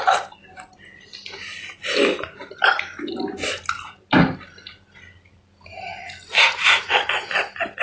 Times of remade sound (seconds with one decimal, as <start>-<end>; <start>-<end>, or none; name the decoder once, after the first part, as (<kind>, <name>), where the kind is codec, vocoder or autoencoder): none